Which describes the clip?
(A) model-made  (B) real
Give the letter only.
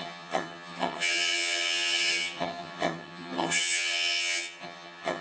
A